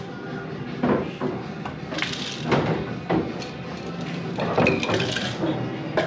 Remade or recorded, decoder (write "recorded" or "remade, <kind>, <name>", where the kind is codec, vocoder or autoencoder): recorded